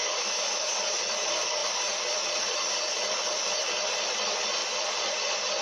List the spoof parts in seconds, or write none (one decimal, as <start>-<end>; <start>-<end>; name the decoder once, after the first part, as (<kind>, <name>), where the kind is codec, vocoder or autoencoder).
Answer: 0.0-0.7 (autoencoder, DAC-VAE)